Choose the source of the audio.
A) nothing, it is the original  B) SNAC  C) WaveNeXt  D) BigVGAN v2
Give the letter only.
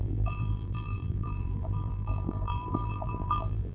D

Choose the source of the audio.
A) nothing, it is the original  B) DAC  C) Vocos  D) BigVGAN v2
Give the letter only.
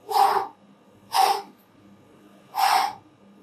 A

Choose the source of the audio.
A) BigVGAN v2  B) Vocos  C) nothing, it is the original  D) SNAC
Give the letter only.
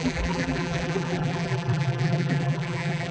A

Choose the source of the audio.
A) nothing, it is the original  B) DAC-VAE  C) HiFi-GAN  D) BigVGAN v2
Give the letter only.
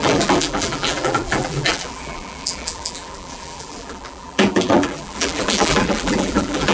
D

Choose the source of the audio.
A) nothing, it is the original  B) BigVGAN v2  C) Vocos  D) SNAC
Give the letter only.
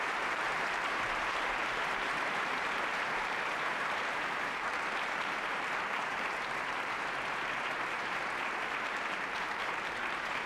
B